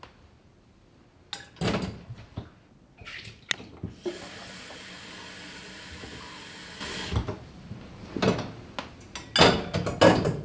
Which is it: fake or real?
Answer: real